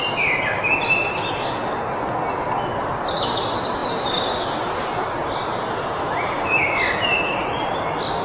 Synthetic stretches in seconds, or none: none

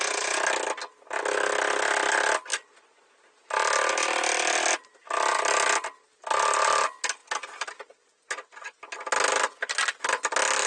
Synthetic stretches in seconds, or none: none